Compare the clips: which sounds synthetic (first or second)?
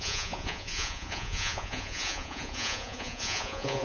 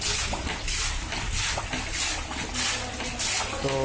first